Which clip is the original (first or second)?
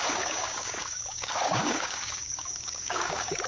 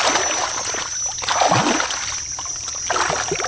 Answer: second